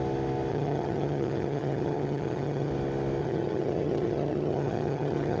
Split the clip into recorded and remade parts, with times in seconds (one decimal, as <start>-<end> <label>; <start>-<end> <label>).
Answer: 0.0-0.5 recorded; 0.5-2.7 remade; 2.7-3.2 recorded; 3.2-5.4 remade